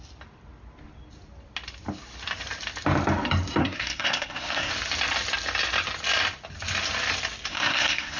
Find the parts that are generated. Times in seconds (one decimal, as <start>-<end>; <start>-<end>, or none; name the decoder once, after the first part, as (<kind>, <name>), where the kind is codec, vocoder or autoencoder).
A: 3.6-4.7 (codec, SNAC); 7.5-8.2